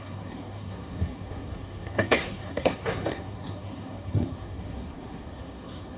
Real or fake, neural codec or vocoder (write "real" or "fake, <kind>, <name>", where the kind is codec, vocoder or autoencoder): fake, codec, SNAC